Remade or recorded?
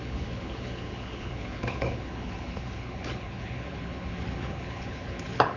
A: remade